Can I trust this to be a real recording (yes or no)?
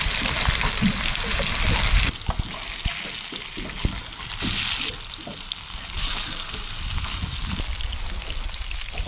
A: yes